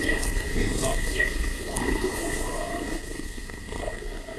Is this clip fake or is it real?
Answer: fake